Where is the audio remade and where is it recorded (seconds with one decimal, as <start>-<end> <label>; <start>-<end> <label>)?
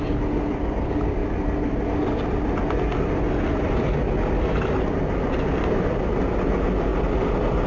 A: 0.0-7.7 recorded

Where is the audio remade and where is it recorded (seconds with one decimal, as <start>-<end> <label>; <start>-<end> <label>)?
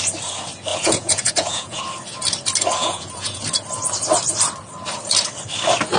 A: 0.0-0.7 recorded; 0.7-1.8 remade; 1.8-2.8 recorded; 2.8-3.4 remade; 3.4-6.0 recorded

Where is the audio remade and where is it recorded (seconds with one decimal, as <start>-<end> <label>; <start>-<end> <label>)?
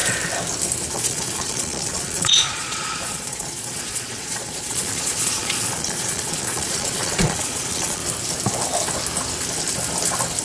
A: 0.0-0.9 recorded; 0.9-8.0 remade; 8.0-10.4 recorded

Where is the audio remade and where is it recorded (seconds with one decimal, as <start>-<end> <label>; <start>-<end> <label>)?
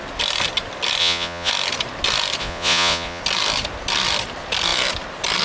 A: 0.0-1.0 recorded; 1.0-1.5 remade; 1.5-2.4 recorded; 2.4-3.2 remade; 3.2-5.4 recorded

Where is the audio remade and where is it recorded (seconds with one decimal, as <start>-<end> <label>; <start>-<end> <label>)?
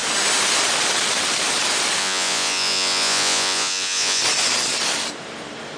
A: 0.0-2.0 recorded; 2.0-4.2 remade; 4.2-5.8 recorded